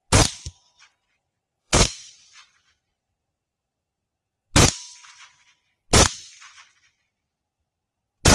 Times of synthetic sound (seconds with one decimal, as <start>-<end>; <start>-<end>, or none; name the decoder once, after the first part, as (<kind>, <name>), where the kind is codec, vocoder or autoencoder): 1.6-2.1 (codec, SNAC)